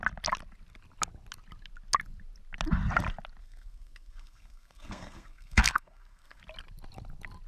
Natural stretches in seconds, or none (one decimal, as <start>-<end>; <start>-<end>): 0.0-3.4; 6.4-7.5